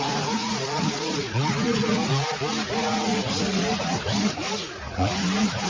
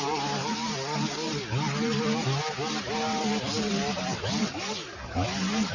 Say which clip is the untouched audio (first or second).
second